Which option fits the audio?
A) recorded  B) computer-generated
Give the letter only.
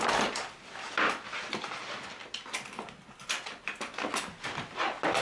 A